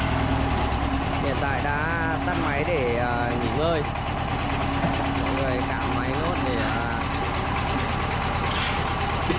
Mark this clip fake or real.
real